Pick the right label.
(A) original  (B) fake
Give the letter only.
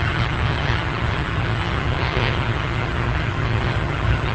B